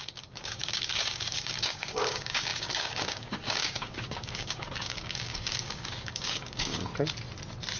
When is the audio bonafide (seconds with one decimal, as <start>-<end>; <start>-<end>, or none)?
6.9-7.8